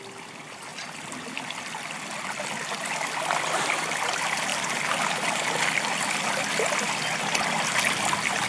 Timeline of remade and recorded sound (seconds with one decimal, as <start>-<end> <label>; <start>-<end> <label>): 0.0-8.5 recorded